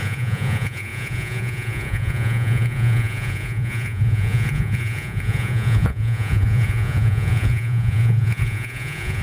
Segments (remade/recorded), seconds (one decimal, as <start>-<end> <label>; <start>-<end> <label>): 0.0-9.2 remade